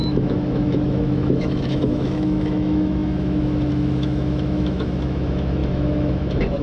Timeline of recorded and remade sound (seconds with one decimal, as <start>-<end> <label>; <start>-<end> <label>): 0.0-6.6 remade